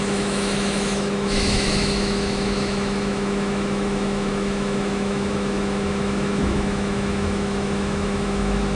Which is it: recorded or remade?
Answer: remade